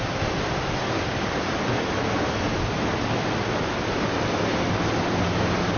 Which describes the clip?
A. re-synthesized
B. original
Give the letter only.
B